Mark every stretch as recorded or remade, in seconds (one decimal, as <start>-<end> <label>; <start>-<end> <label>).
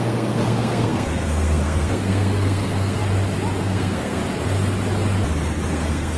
0.0-3.0 remade; 3.0-3.6 recorded; 3.6-4.2 remade; 4.2-5.7 recorded; 5.7-6.2 remade